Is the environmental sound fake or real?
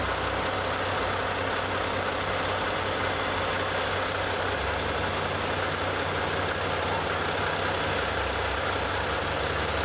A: real